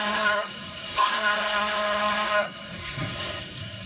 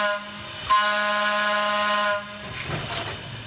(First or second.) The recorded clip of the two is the second